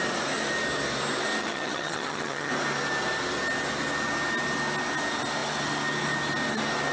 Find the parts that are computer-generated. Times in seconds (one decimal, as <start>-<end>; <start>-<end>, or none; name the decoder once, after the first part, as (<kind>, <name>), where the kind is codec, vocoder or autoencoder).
1.4-2.5 (vocoder, HiFi-GAN)